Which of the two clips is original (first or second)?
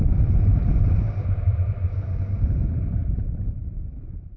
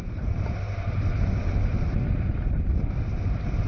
second